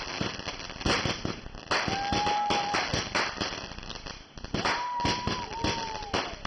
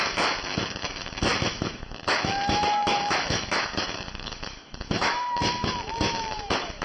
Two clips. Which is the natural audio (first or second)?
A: first